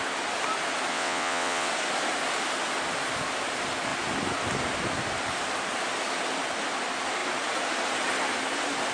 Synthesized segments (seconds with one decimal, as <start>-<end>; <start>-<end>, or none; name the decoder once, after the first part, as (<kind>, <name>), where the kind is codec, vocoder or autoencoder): 0.9-1.7 (vocoder, WaveNeXt)